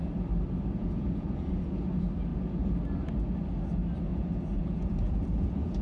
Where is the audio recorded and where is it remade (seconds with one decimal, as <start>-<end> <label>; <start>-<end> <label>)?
0.0-0.8 recorded; 0.8-1.9 remade; 1.9-2.3 recorded; 2.3-2.8 remade; 2.8-4.1 recorded; 4.1-5.8 remade